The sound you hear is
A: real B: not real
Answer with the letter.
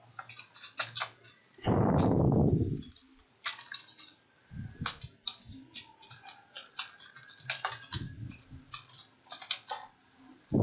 A